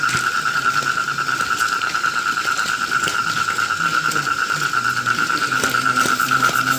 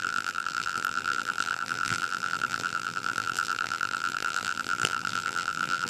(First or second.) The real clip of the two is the first